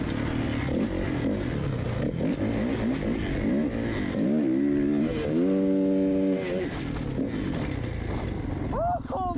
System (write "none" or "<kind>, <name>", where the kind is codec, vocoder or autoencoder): none